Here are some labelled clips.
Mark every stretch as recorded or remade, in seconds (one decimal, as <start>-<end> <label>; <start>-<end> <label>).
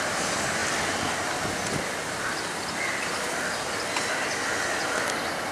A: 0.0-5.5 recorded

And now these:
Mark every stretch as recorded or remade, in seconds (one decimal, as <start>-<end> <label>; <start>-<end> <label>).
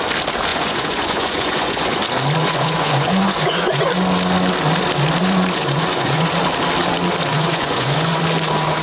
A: 0.0-0.5 recorded; 0.5-2.0 remade; 2.0-2.4 recorded; 2.4-3.8 remade; 3.8-5.2 recorded; 5.2-6.4 remade; 6.4-7.3 recorded; 7.3-8.2 remade; 8.2-8.8 recorded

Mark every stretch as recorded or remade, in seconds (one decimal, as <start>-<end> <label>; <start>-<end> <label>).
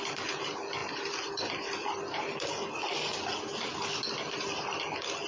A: 0.0-5.3 recorded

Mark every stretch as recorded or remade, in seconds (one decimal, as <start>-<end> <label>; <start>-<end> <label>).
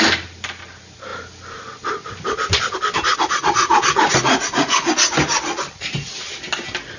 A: 0.0-3.1 recorded; 3.1-4.9 remade; 4.9-7.0 recorded